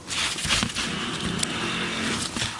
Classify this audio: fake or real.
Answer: real